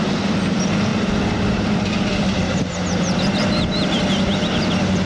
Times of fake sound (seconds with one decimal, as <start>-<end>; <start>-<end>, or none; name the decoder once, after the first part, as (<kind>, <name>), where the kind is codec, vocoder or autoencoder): 0.0-5.1 (vocoder, BigVGAN v2)